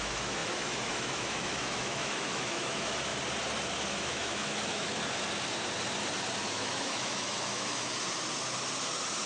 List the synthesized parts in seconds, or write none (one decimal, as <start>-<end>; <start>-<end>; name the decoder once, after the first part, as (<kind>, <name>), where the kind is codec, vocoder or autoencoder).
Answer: 0.0-3.1 (autoencoder, DAC-VAE); 3.9-4.9; 6.5-7.9